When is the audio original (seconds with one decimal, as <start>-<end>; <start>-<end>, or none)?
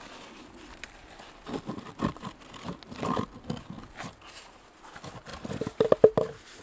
0.0-1.0; 2.0-6.6